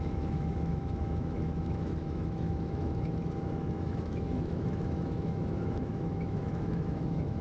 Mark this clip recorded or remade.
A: remade